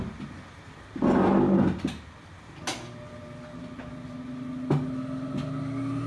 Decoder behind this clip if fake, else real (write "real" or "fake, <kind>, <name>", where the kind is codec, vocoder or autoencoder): real